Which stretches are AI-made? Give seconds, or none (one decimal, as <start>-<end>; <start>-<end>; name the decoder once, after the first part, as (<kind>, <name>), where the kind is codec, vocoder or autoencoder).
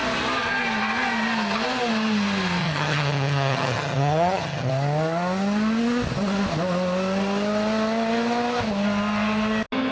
2.6-4.7 (vocoder, HiFi-GAN)